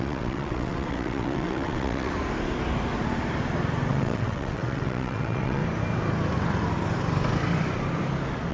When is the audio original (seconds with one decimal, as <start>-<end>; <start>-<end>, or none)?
2.1-3.9; 5.6-8.5